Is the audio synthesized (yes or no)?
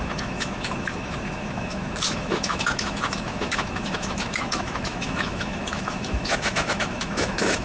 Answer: yes